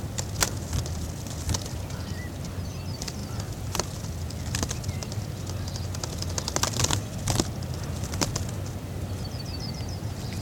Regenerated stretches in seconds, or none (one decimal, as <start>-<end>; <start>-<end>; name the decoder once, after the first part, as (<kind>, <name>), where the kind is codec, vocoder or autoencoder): none